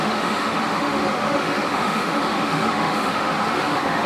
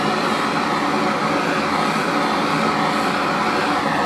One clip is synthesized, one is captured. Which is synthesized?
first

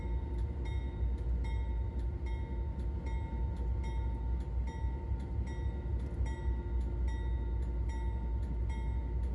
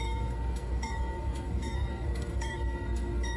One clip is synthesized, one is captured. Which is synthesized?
second